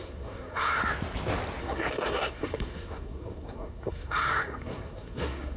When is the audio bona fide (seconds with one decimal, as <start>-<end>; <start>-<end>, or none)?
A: 0.8-1.6

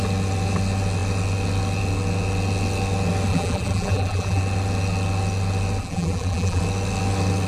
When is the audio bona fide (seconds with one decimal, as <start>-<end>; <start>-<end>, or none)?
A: 0.0-3.3; 4.4-5.8; 6.6-7.5

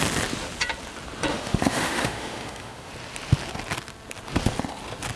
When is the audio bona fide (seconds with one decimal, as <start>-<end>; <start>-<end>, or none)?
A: 0.0-1.3; 2.9-5.2

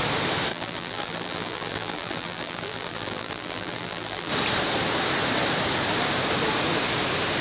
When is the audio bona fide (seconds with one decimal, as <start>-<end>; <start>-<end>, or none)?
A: 0.0-0.5; 4.3-7.4

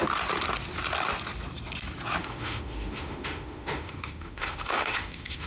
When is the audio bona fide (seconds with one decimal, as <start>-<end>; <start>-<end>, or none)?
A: 0.0-2.2